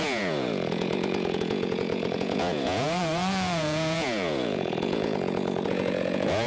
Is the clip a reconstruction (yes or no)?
yes